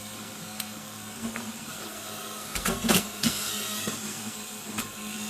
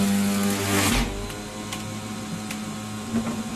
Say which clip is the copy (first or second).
first